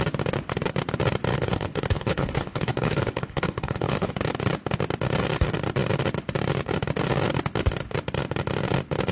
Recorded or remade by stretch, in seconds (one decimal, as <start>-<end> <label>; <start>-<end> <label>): 0.0-1.3 recorded; 1.3-4.1 remade; 4.1-9.1 recorded

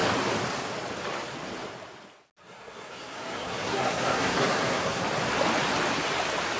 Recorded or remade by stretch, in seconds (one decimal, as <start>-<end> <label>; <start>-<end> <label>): 0.0-2.4 recorded; 2.4-5.0 remade; 5.0-6.6 recorded